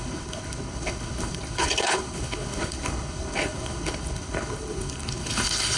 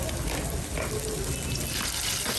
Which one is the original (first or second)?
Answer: second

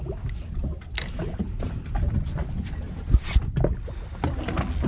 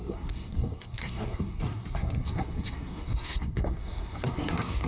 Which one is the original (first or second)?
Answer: first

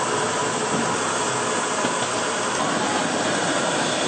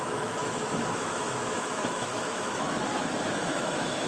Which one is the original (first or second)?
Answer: first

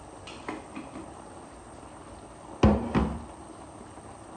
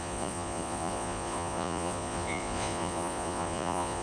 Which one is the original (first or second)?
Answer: first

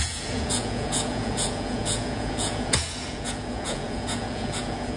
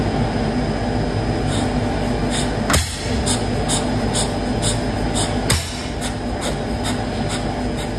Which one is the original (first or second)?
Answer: second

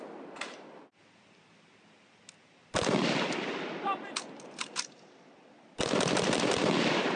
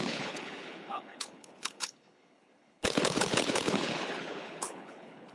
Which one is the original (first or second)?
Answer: first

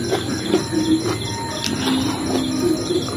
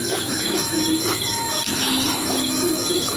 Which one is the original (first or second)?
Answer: first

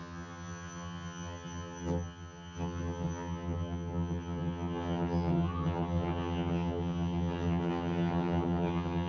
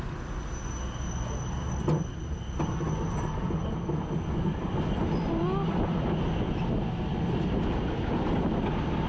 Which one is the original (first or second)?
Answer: second